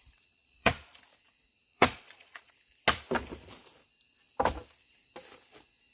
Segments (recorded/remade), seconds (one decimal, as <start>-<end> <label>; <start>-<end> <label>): 0.0-0.7 remade; 0.7-1.7 recorded; 1.7-2.5 remade; 2.5-5.9 recorded